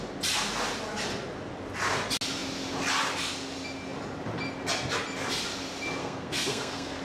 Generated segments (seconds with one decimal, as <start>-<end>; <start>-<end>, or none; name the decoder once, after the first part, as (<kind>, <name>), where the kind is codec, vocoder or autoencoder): 6.0-7.0 (codec, SNAC)